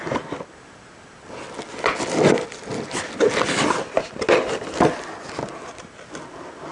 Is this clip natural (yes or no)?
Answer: yes